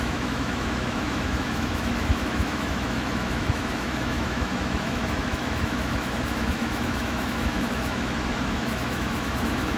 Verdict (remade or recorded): remade